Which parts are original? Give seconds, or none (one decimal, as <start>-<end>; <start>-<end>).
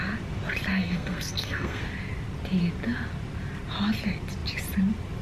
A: 0.0-0.7; 1.8-5.2